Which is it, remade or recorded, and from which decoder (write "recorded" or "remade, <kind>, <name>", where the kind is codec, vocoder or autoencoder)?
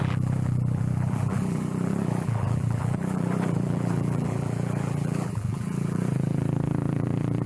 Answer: remade, vocoder, BigVGAN v2